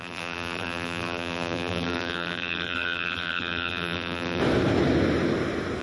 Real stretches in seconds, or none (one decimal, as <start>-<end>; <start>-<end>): 4.4-5.8

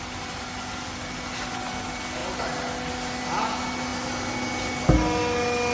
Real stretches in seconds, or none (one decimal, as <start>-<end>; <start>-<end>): 0.0-5.7

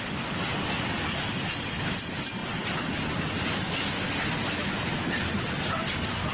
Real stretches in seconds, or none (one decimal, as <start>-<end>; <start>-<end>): 0.0-6.3

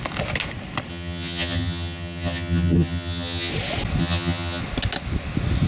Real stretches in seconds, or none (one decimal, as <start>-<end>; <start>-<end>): 0.0-0.9; 3.5-4.0; 4.6-5.7

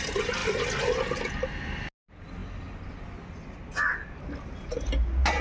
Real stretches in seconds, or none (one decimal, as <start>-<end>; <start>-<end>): 0.0-5.4

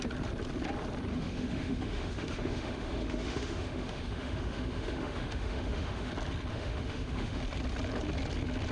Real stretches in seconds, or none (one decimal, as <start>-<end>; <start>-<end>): 0.0-1.1; 6.1-6.5; 7.4-8.7